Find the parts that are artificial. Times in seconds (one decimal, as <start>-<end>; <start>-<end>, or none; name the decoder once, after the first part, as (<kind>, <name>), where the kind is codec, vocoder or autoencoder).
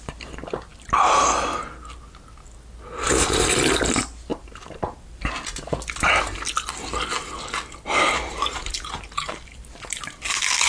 4.3-5.3 (vocoder, BigVGAN v2); 8.3-9.6